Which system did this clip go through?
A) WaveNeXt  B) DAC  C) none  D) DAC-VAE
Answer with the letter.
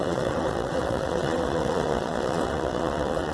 A